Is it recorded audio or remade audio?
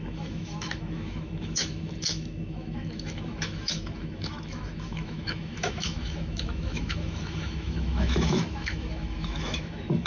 remade